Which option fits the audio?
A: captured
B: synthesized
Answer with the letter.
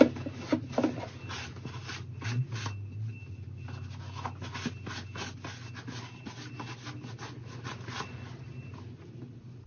A